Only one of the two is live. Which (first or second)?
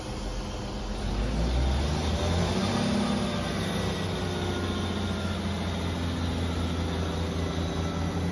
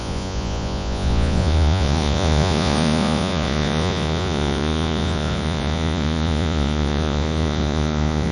first